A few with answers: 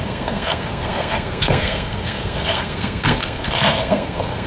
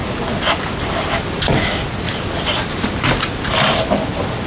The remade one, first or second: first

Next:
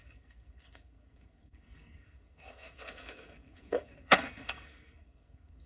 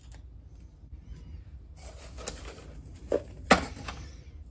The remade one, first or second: first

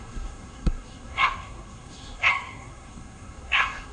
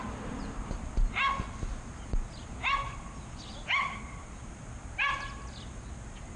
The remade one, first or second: first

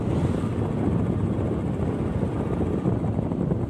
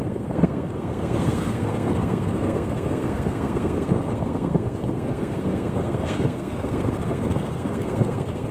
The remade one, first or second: second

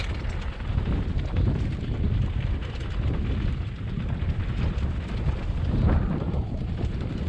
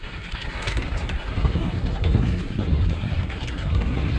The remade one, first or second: second